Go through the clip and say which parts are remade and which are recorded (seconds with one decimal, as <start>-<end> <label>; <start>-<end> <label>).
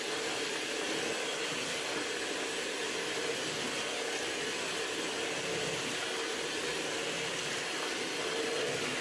0.0-6.6 recorded; 6.6-7.5 remade; 7.5-9.0 recorded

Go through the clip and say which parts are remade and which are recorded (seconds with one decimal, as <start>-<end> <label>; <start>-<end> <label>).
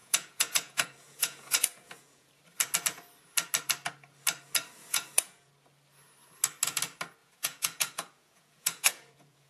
0.0-2.3 remade; 2.3-4.8 recorded; 4.8-5.5 remade; 5.5-7.2 recorded; 7.2-9.5 remade